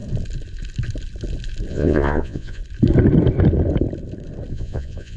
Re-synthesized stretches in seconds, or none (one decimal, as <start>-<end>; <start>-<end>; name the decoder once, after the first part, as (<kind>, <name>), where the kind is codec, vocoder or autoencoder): 1.7-2.6 (vocoder, Vocos); 4.5-5.2